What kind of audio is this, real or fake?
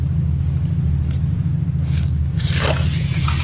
real